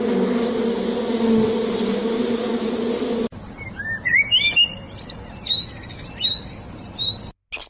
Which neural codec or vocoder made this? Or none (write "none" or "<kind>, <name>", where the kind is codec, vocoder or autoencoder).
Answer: none